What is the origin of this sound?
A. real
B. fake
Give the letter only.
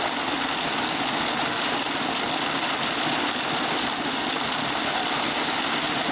A